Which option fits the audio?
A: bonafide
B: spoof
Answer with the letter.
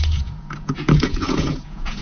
B